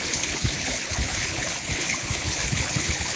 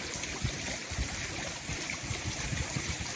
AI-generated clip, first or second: first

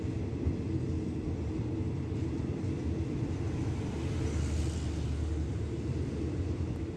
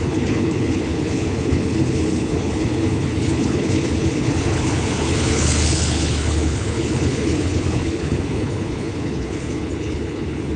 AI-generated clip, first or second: second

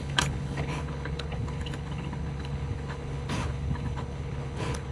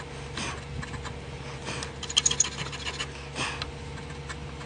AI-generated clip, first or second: first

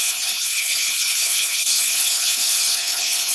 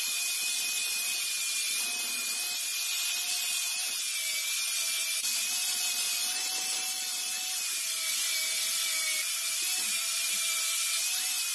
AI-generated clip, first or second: first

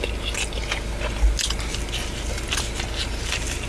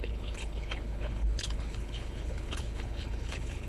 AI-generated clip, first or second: second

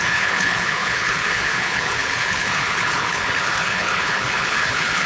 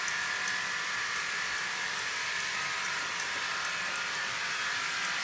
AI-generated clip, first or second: first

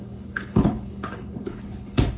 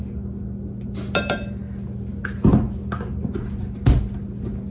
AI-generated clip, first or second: first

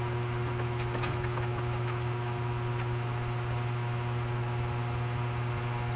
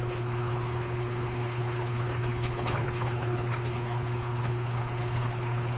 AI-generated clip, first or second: second